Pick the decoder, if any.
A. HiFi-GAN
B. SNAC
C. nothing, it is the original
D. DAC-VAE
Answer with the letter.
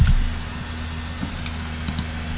C